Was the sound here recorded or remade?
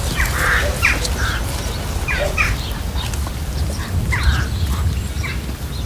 recorded